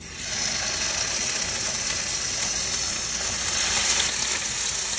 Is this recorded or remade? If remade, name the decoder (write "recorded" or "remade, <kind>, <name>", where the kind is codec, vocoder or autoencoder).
recorded